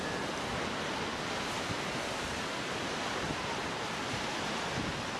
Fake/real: real